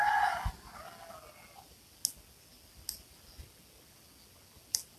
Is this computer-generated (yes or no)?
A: no